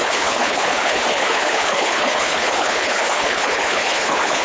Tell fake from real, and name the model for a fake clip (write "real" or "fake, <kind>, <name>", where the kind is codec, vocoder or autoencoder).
fake, codec, HILCodec